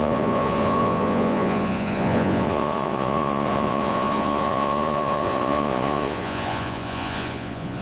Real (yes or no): no